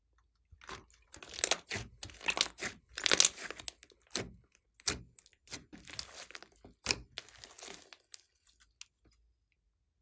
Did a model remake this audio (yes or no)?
no